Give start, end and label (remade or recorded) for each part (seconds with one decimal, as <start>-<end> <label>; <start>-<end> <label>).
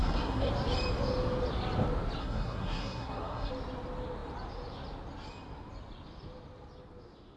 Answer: 0.0-0.5 remade; 0.5-2.2 recorded; 2.2-3.5 remade; 3.5-7.4 recorded